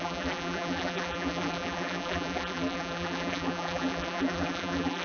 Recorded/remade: remade